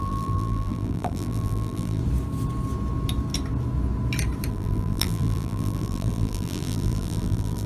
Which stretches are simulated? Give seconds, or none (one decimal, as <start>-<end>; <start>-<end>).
0.0-2.0; 4.5-7.7